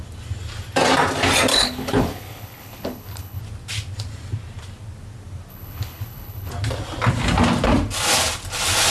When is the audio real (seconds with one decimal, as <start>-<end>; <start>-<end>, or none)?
0.0-1.5; 3.4-5.5; 6.5-8.9